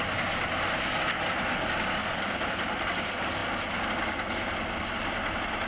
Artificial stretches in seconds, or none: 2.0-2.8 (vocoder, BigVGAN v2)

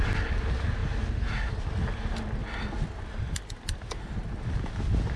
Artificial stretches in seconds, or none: 2.4-3.0 (vocoder, BigVGAN v2)